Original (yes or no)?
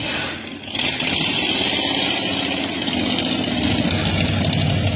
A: yes